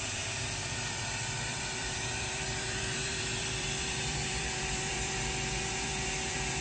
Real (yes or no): no